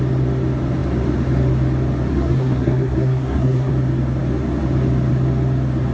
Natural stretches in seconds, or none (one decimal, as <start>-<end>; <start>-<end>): 0.0-2.1; 3.7-5.9